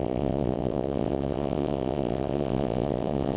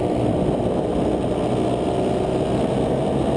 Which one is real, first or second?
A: second